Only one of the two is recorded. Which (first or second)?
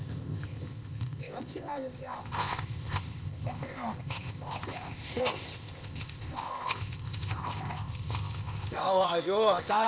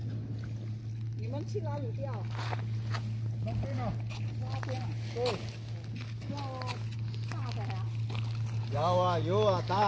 second